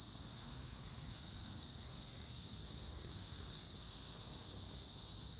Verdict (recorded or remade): remade